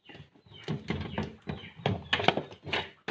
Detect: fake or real real